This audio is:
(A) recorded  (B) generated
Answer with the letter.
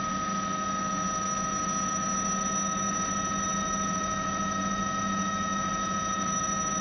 B